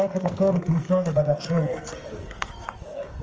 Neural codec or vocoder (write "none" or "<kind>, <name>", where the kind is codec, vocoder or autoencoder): codec, SNAC